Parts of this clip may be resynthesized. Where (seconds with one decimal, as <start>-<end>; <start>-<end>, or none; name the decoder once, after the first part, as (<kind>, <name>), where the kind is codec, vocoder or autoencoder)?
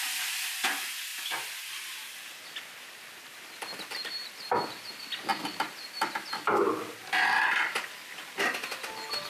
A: none